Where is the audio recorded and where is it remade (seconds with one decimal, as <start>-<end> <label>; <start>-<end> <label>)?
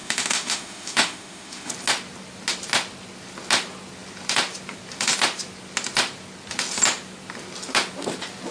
0.0-1.7 remade; 1.7-8.5 recorded